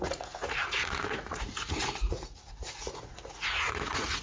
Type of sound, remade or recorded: remade